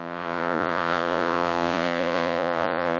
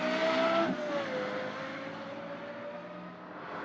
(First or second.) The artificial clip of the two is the first